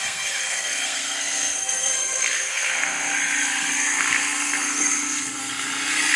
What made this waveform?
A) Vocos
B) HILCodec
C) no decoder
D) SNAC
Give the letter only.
D